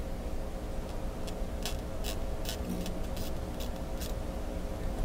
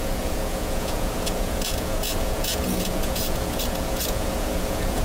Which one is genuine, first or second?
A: first